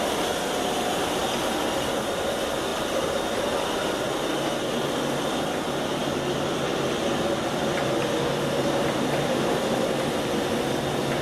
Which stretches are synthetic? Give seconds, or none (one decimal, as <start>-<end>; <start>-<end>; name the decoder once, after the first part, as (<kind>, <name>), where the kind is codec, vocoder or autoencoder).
none

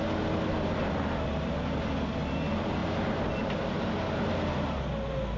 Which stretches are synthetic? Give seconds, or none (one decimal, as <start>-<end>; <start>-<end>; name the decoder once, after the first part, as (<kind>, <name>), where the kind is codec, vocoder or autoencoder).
none